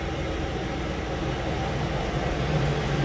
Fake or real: real